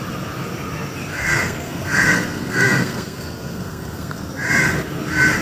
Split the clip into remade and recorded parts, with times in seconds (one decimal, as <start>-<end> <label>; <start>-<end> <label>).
0.0-1.1 recorded; 1.1-4.3 remade; 4.3-5.4 recorded